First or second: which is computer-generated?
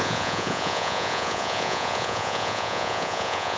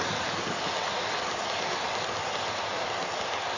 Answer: first